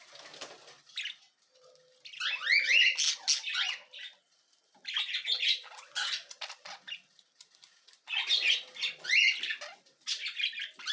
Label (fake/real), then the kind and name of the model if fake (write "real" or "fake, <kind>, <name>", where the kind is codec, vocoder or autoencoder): real